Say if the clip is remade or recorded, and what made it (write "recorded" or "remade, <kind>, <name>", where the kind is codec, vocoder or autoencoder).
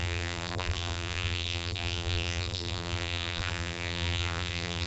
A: remade, vocoder, BigVGAN v2